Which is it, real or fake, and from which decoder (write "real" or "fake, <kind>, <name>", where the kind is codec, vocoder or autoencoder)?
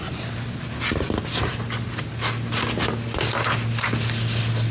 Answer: real